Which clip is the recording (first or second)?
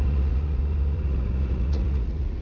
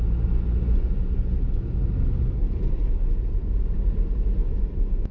second